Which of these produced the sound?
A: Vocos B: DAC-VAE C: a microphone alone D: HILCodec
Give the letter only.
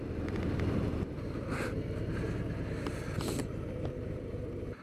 C